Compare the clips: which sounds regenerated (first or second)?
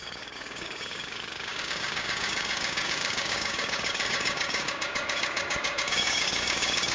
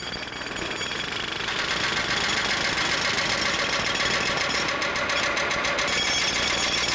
first